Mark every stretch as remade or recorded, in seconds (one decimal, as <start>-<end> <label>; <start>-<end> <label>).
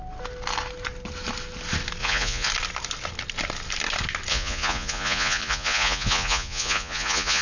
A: 0.0-2.0 recorded; 2.0-2.5 remade; 2.5-4.3 recorded; 4.3-7.4 remade